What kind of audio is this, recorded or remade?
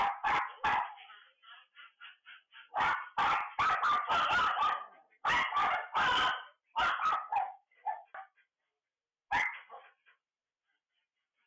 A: remade